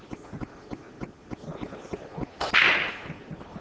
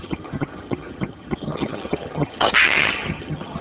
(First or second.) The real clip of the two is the first